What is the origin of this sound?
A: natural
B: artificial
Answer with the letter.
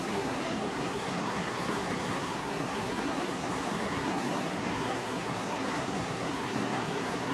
B